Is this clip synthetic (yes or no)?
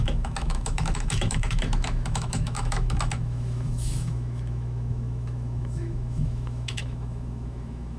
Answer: yes